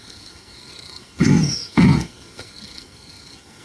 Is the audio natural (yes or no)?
no